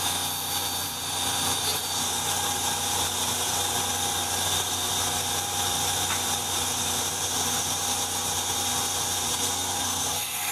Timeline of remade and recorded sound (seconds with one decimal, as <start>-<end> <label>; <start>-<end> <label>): 0.0-9.3 recorded; 9.3-10.5 remade